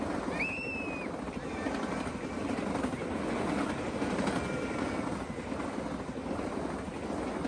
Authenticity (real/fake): real